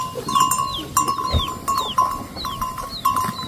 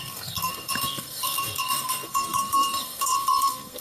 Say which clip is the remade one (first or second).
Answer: second